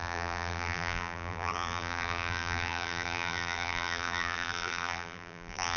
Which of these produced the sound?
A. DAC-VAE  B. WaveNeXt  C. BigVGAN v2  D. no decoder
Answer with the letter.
C